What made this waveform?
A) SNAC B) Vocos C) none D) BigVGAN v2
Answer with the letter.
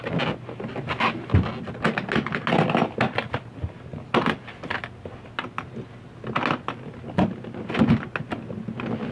C